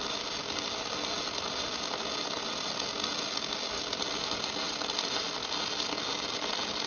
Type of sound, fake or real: real